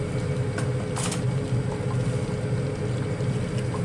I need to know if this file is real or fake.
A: real